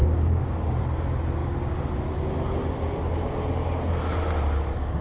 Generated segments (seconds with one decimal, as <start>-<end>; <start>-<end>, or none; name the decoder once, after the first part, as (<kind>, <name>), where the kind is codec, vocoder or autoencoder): 0.0-0.8 (codec, DAC)